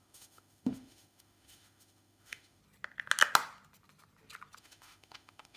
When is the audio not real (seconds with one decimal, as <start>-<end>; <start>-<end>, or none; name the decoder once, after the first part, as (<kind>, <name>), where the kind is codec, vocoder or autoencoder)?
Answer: 0.0-2.6 (autoencoder, DAC-VAE); 4.6-5.6